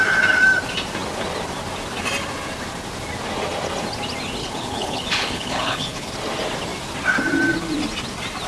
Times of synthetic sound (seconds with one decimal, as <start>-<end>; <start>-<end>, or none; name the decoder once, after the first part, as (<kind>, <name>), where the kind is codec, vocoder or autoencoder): 4.4-6.1 (codec, HILCodec)

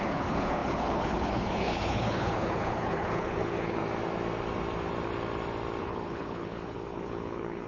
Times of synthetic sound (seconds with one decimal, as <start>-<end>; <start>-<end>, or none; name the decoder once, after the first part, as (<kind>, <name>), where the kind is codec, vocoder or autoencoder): 0.0-3.8 (codec, HILCodec); 5.8-7.7